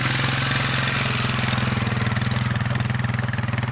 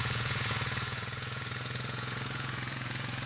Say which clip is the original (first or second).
first